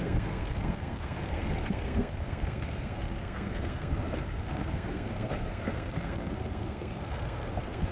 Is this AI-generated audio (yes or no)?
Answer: yes